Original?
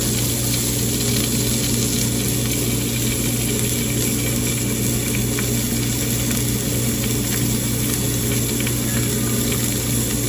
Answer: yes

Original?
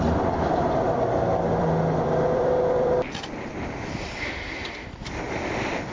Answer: no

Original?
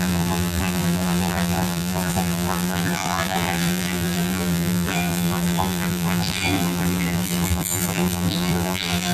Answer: no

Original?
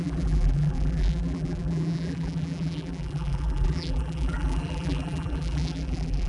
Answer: no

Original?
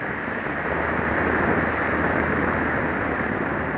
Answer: yes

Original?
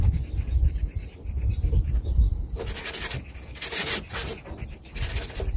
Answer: yes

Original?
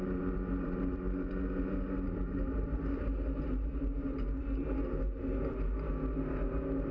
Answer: no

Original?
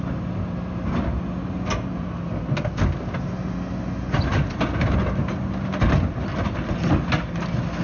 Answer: yes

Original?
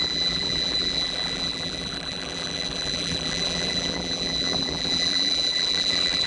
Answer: no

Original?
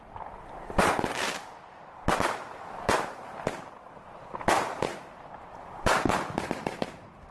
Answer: yes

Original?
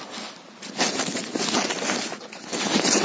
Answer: yes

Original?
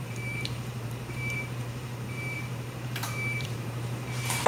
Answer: no